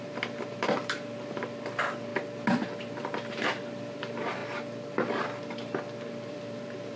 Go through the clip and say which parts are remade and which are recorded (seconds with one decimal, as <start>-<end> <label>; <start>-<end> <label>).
0.0-2.1 remade; 2.1-2.8 recorded; 2.8-4.4 remade; 4.4-6.3 recorded; 6.3-7.0 remade